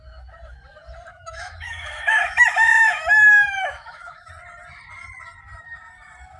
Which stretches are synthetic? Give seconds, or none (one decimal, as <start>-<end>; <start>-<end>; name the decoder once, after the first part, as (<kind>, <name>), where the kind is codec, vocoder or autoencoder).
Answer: 1.1-4.3 (autoencoder, DAC-VAE)